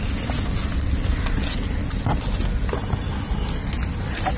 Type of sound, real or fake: real